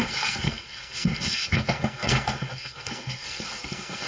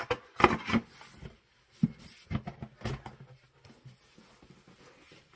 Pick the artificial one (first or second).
first